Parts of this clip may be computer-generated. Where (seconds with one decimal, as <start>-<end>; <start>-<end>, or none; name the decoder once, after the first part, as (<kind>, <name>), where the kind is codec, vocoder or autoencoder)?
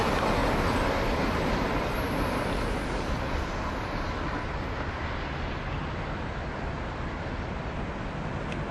none